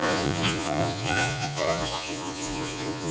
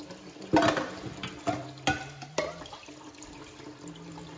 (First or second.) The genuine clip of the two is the second